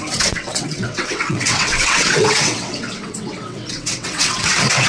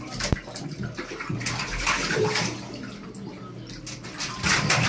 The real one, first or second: second